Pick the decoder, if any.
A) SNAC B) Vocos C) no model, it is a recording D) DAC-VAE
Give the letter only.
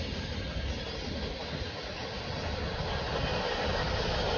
C